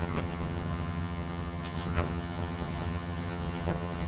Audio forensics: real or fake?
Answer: fake